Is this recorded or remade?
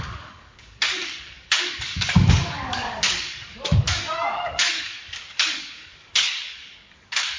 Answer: remade